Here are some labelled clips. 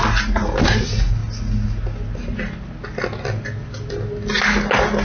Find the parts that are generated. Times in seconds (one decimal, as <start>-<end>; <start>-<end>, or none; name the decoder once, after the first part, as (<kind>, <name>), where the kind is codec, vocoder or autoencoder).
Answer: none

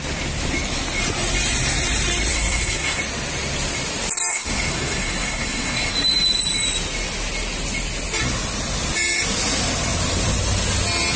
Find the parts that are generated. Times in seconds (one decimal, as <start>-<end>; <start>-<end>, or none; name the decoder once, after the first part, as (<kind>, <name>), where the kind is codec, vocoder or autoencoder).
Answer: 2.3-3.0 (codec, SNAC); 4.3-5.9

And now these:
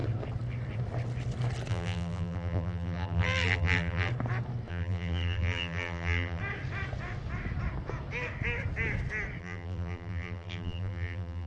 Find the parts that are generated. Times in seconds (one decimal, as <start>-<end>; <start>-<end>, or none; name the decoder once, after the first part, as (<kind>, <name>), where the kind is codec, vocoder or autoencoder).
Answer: 1.7-4.1 (vocoder, BigVGAN v2); 4.7-6.4; 9.4-11.5

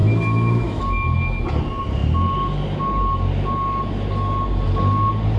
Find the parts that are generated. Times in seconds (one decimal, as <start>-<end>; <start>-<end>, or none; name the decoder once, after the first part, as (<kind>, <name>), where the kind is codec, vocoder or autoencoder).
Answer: 0.0-0.8 (autoencoder, DAC-VAE)